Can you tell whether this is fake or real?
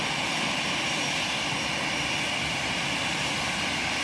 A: real